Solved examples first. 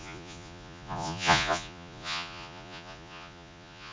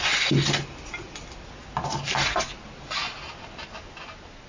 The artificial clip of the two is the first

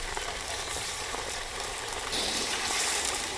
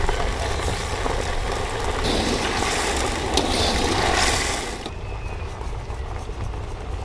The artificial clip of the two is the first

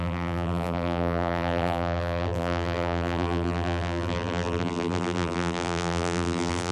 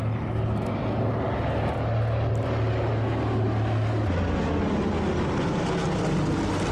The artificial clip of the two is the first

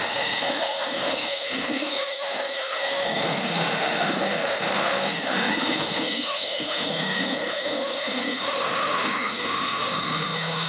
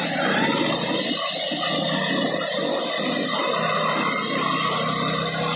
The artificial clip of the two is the first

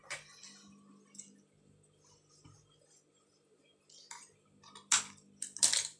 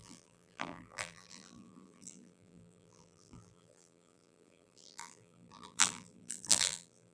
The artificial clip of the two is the second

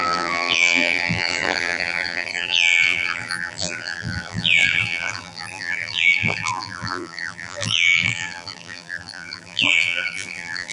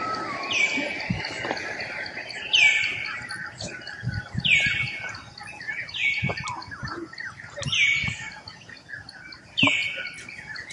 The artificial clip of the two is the first